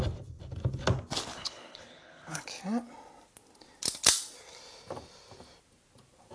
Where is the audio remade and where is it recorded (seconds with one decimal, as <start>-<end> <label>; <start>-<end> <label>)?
0.0-1.3 recorded; 1.3-2.6 remade; 2.6-6.3 recorded